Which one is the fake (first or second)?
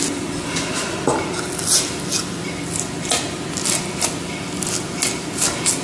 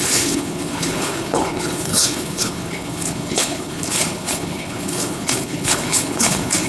second